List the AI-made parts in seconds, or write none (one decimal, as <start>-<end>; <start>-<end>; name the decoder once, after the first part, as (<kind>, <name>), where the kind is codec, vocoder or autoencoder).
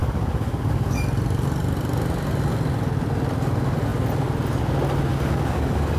0.0-1.0 (codec, DAC); 5.1-6.0